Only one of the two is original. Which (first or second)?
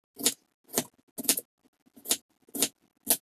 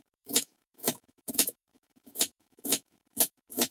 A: first